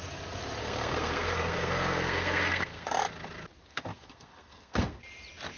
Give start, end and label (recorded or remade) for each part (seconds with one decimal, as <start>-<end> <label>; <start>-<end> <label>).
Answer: 0.0-0.6 recorded; 0.6-3.0 remade; 3.0-3.9 recorded; 3.9-5.0 remade; 5.0-5.6 recorded